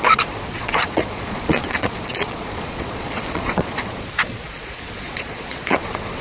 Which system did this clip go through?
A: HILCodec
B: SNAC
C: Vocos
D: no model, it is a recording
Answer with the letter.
C